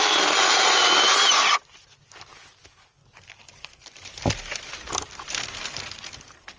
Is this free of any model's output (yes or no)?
yes